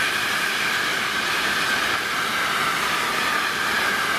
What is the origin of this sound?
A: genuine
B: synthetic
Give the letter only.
A